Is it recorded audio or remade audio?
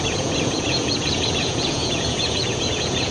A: remade